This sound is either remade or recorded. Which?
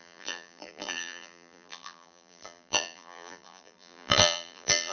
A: remade